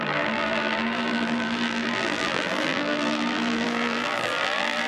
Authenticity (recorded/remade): remade